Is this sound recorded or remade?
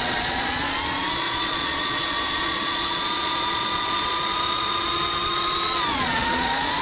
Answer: remade